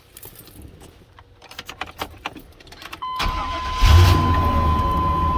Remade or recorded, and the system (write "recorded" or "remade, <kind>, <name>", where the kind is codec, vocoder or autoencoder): recorded